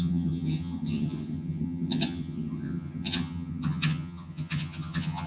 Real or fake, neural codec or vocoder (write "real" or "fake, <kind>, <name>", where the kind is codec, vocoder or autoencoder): fake, vocoder, HiFi-GAN